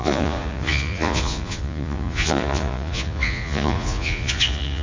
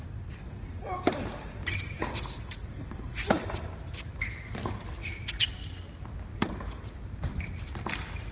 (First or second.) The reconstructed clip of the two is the first